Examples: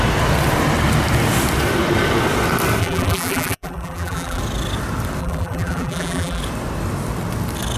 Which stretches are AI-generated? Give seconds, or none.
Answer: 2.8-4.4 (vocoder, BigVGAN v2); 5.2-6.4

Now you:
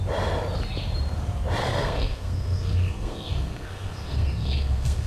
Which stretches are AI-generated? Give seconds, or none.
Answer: 1.6-5.1 (codec, SNAC)

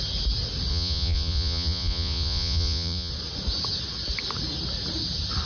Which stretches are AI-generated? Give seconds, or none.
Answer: 0.7-3.1 (vocoder, Vocos)